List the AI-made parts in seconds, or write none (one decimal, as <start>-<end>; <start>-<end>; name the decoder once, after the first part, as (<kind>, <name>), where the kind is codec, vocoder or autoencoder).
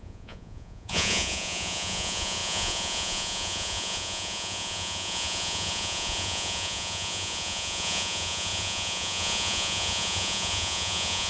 0.0-11.3 (vocoder, Vocos)